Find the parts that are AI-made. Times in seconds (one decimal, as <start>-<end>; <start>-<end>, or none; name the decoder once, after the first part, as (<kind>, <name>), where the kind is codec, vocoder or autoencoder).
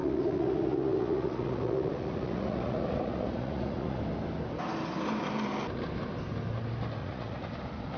0.0-4.0 (vocoder, Vocos); 7.0-7.5